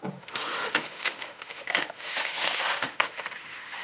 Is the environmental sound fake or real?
fake